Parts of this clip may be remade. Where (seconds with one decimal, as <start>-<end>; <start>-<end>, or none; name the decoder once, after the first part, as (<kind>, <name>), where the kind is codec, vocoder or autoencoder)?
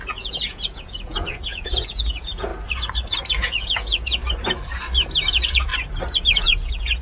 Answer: 0.0-2.5 (vocoder, Vocos); 3.4-4.2; 5.3-5.7; 6.3-7.0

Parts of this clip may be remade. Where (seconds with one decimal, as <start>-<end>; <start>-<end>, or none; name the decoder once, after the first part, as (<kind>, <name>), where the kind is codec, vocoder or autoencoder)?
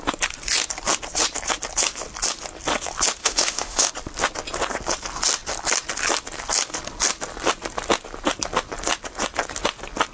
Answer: 3.2-3.9 (autoencoder, DAC-VAE)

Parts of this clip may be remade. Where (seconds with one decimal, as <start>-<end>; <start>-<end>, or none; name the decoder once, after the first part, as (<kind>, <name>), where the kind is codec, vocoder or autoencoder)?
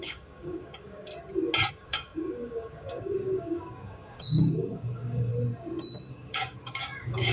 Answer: 0.0-1.1 (codec, DAC); 1.7-5.3; 6.1-7.3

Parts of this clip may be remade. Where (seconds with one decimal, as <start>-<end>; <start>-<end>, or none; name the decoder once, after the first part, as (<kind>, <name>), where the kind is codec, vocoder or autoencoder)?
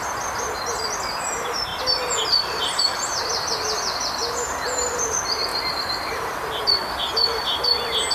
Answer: 5.5-6.6 (vocoder, BigVGAN v2)